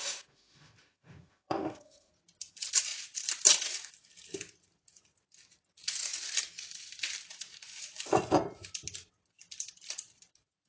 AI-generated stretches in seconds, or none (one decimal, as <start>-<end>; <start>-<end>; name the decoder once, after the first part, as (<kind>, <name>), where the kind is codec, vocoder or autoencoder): 0.0-2.1 (autoencoder, DAC-VAE)